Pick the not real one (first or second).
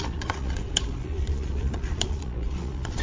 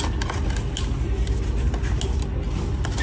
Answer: first